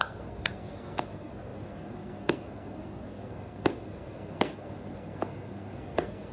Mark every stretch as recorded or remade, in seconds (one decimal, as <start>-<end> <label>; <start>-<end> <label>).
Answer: 0.0-6.3 remade